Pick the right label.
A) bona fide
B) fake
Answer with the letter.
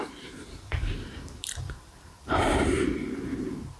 B